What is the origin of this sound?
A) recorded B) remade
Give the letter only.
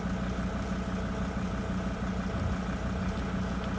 A